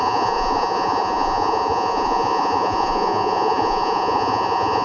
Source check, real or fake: fake